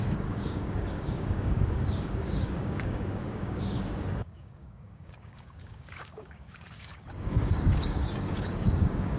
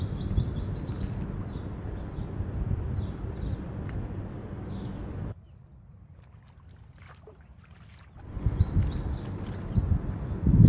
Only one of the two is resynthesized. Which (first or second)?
first